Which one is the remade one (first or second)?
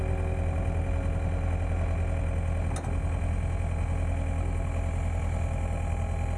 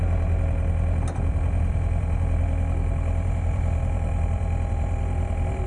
second